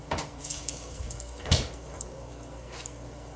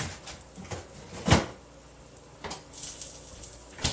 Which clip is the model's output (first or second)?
first